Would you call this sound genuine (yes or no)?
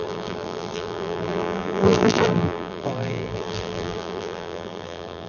no